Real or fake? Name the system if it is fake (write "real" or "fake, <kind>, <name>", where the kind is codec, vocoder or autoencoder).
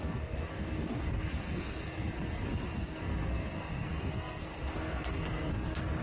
fake, codec, SNAC